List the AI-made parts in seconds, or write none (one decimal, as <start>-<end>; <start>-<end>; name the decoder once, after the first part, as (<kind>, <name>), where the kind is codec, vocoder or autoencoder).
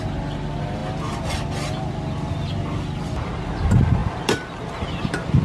none